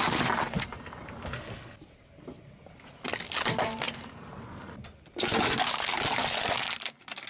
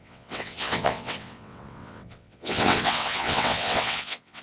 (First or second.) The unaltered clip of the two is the first